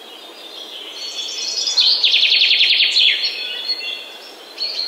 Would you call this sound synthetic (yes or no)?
no